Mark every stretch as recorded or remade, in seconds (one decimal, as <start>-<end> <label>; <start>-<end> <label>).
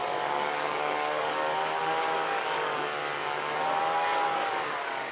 0.0-3.0 remade; 3.0-3.8 recorded; 3.8-5.1 remade